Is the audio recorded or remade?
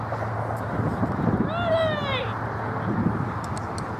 recorded